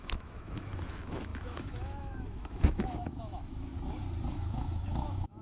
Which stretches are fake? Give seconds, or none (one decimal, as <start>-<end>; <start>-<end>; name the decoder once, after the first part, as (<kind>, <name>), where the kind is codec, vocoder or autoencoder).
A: 0.0-3.7 (autoencoder, DAC-VAE); 4.3-5.4